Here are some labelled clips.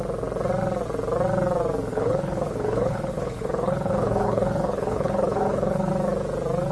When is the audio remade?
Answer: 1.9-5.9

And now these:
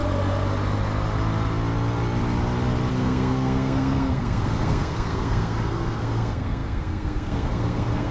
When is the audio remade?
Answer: 2.9-8.1

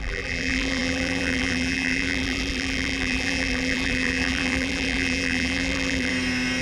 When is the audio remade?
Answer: 0.0-6.1

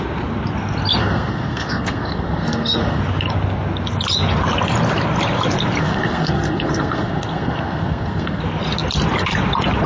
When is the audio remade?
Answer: 1.0-3.0; 5.8-8.4